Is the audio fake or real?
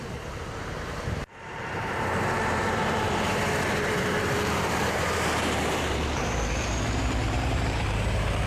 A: fake